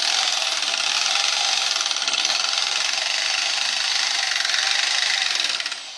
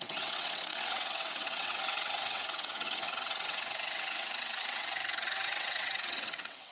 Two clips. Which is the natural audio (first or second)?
first